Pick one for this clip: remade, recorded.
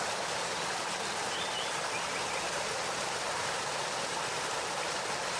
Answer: recorded